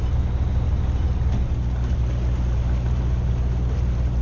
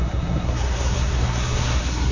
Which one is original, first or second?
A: first